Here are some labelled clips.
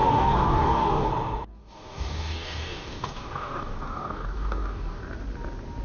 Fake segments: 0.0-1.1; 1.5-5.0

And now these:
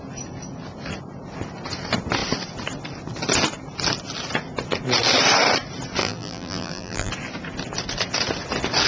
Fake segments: 6.0-7.1